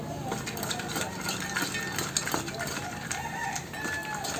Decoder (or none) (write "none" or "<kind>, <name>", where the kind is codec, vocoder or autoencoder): none